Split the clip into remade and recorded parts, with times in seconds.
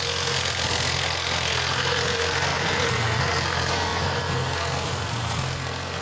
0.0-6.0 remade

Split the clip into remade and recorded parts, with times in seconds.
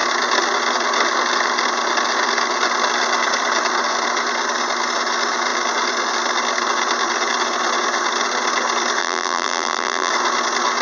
0.0-9.0 recorded; 9.0-10.1 remade; 10.1-10.8 recorded